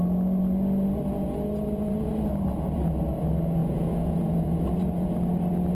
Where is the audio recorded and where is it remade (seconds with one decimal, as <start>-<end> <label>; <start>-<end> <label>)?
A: 0.0-1.2 recorded; 1.2-2.1 remade; 2.1-3.6 recorded; 3.6-5.1 remade; 5.1-5.7 recorded